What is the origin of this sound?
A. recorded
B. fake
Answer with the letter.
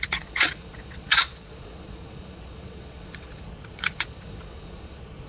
B